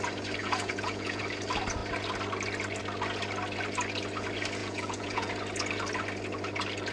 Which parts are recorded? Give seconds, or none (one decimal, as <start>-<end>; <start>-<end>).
0.0-0.4; 1.2-4.6; 5.3-6.9